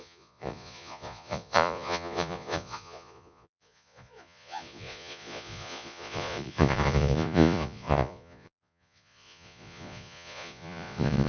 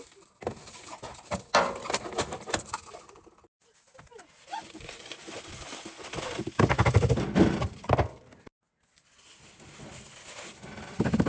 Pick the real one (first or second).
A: second